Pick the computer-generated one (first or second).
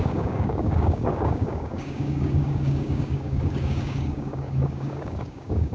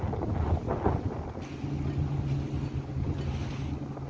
first